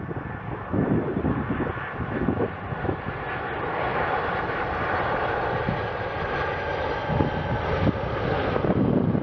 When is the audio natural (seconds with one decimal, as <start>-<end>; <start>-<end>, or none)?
0.0-7.0; 8.2-9.2

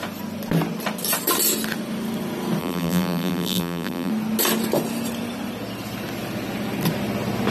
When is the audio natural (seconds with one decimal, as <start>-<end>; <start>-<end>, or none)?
0.0-2.6; 4.1-7.5

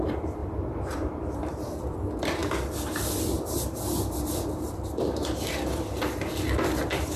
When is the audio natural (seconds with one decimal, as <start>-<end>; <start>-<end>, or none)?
none

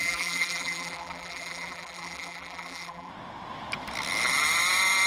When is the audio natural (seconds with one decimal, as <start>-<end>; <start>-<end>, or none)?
3.1-5.1

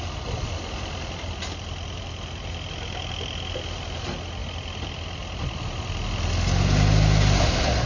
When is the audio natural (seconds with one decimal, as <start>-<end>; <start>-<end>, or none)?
0.0-7.9

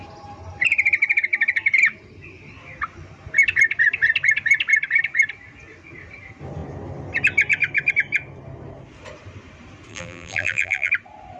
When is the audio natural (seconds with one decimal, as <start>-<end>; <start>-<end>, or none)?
0.0-9.9; 10.9-11.4

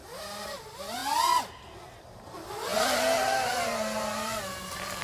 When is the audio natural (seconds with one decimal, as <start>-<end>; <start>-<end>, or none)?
0.0-5.0

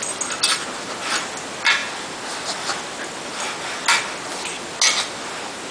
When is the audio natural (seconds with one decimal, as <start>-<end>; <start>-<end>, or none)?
0.0-5.7